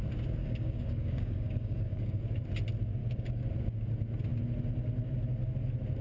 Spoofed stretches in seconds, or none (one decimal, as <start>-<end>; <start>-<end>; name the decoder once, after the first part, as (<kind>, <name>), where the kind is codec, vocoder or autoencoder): 0.4-2.2 (codec, DAC); 3.0-3.5